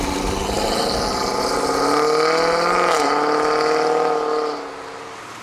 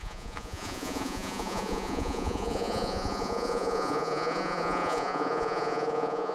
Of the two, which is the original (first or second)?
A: first